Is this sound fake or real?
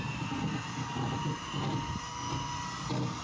real